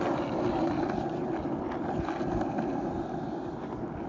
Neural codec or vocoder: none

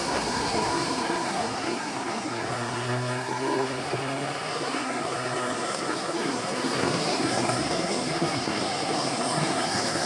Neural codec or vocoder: codec, SNAC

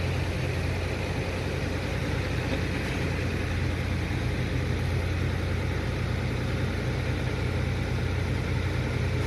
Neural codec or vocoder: none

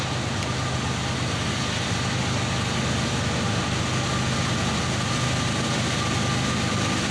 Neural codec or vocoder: none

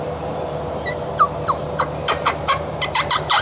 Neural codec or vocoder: vocoder, BigVGAN v2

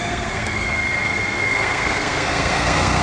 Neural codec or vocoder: codec, SNAC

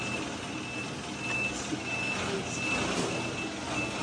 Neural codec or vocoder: none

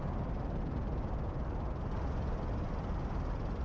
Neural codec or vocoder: none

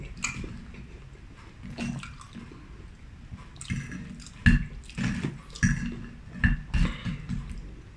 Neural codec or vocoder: none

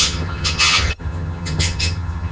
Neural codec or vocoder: vocoder, HiFi-GAN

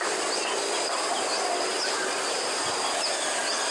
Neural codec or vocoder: none